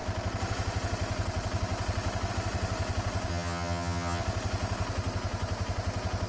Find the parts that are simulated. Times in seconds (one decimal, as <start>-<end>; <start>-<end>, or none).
3.3-4.2